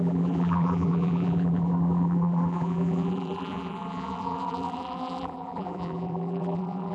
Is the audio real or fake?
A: fake